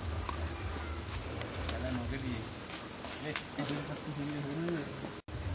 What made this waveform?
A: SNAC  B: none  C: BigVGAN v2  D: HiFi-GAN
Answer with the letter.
B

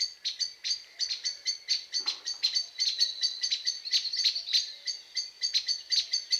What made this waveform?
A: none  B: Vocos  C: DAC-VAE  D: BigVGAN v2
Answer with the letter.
A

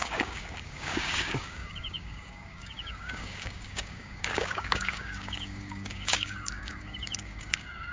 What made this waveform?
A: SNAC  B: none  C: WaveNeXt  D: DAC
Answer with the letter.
D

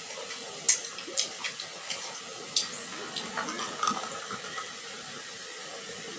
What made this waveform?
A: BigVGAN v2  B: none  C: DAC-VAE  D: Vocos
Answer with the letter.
B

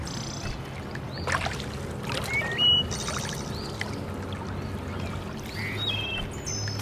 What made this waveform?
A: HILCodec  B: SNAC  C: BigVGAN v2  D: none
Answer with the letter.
D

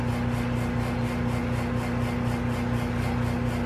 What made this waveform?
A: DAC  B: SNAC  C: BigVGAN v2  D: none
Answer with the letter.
D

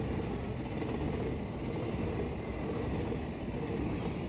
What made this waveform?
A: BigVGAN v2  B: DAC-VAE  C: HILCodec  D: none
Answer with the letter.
D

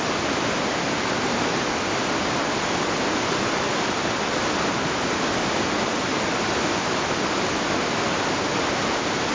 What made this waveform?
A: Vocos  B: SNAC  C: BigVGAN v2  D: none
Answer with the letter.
D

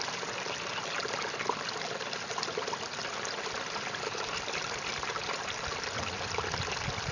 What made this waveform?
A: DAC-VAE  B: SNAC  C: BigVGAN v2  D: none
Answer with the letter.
D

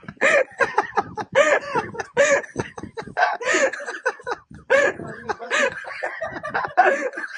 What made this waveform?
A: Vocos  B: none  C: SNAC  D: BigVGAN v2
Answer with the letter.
A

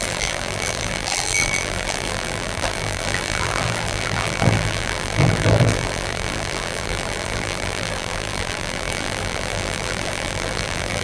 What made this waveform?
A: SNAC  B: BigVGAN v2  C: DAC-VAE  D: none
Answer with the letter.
B